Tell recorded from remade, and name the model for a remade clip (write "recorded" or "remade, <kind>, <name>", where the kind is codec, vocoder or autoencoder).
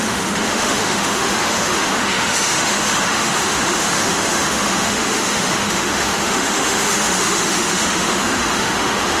remade, autoencoder, DAC-VAE